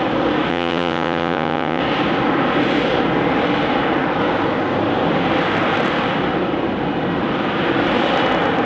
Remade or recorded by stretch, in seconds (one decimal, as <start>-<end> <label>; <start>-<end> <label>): 0.0-0.5 recorded; 0.5-1.8 remade; 1.8-8.7 recorded